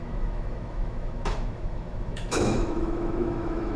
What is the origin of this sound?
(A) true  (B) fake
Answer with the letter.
B